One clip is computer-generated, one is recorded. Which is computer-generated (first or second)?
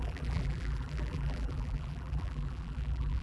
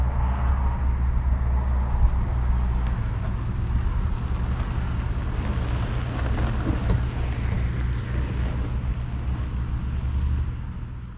first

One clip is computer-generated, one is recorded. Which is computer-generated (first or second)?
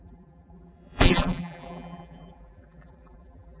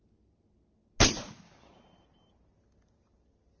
first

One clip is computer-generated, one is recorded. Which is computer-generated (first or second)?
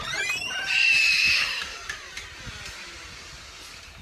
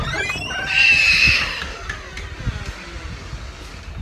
first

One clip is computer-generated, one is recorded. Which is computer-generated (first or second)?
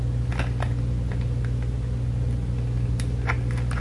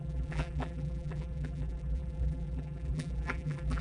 second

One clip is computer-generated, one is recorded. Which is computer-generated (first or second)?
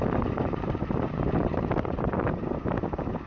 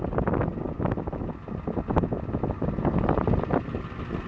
first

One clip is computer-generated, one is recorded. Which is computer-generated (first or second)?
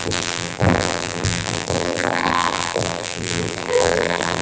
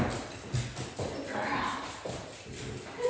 first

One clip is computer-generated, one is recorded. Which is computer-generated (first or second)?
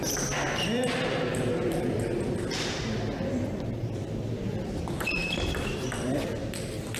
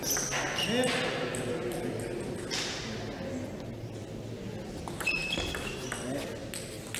first